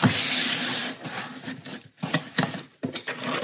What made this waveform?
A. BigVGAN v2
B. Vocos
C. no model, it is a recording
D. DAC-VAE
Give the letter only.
C